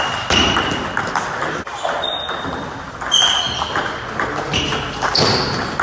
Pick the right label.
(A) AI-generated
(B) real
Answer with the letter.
B